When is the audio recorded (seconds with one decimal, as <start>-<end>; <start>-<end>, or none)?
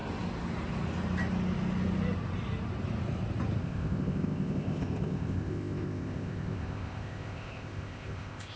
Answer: 0.0-3.6